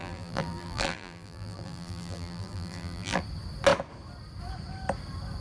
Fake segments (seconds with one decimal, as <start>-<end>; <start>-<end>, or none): 0.0-3.2